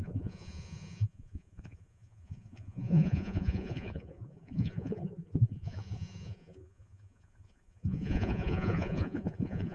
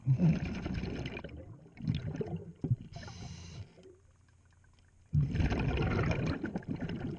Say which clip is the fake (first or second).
first